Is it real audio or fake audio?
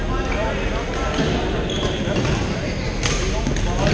real